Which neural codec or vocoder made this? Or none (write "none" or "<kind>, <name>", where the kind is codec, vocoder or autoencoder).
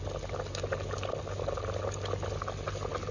none